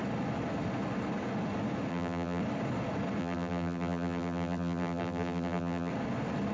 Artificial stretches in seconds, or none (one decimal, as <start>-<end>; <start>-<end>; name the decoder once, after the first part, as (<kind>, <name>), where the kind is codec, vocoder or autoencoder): 1.9-2.4 (vocoder, BigVGAN v2); 3.2-5.9